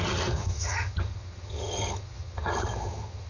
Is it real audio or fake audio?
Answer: fake